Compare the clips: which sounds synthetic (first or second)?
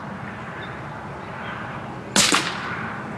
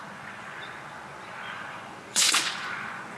second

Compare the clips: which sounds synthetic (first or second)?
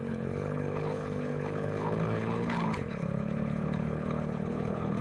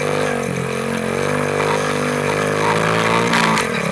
first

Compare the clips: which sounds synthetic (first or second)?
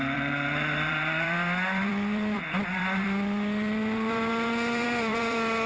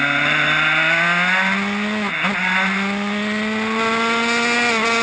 first